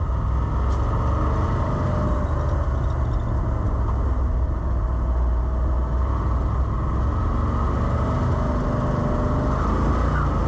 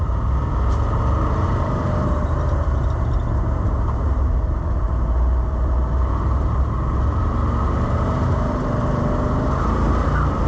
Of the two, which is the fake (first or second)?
second